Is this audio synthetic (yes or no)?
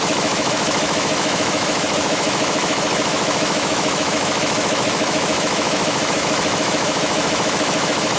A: yes